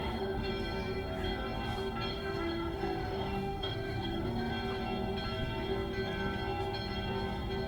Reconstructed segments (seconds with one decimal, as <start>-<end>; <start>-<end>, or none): 0.0-0.5; 2.1-4.5